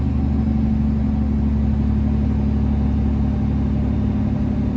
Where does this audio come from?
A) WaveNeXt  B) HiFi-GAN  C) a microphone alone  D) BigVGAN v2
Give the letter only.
C